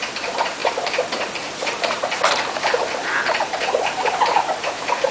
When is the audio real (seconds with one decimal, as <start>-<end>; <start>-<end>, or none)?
none